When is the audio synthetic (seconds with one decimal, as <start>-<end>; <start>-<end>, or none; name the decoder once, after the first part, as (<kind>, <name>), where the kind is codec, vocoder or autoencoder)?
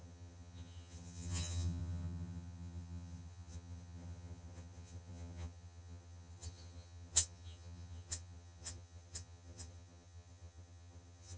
0.0-11.4 (vocoder, HiFi-GAN)